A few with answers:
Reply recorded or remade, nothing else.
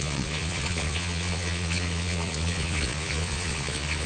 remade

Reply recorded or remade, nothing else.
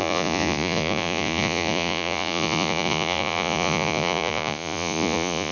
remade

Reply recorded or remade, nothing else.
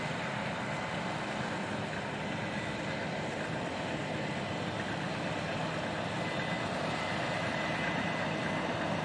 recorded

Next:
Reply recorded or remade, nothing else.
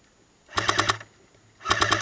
recorded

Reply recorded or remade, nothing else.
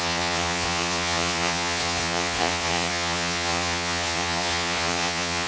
remade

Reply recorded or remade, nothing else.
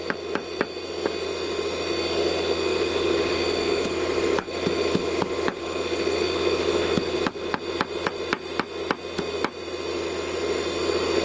recorded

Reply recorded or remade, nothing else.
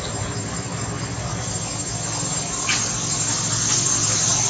recorded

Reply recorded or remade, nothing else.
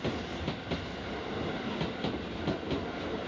recorded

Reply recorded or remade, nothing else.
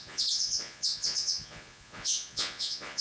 remade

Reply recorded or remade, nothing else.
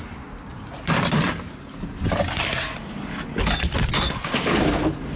recorded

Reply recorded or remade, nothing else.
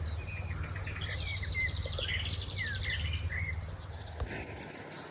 recorded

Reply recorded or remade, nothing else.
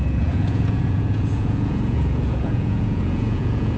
remade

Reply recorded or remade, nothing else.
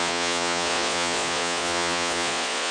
remade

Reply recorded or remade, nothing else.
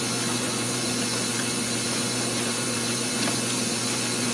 remade